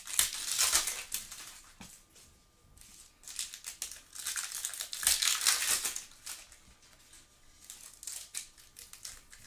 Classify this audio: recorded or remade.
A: recorded